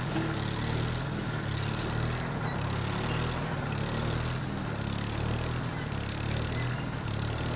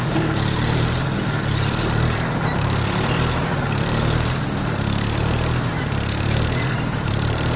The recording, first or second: first